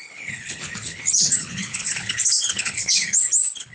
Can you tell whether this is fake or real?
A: fake